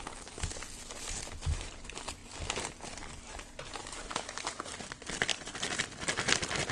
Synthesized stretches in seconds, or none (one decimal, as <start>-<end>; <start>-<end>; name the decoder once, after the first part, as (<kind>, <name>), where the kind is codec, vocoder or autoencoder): none